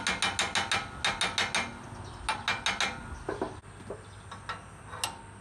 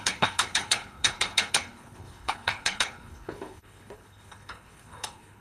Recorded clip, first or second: first